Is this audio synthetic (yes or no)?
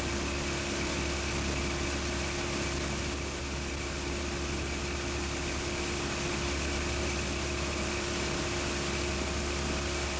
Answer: no